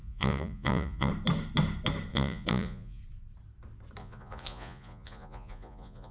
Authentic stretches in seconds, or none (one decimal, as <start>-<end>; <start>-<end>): 1.1-2.1; 3.0-4.0